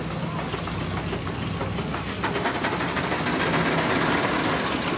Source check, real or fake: real